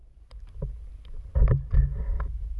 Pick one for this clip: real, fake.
real